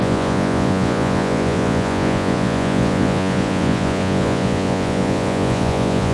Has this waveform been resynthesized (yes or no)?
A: yes